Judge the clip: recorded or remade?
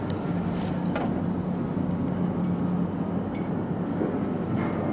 recorded